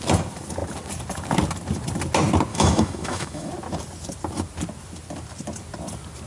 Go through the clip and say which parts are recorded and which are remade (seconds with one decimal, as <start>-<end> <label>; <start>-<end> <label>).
0.0-2.5 recorded; 2.5-3.5 remade; 3.5-6.3 recorded